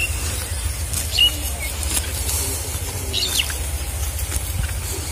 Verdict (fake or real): real